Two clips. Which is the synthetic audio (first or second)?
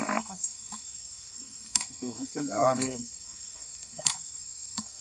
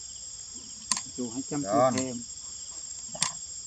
first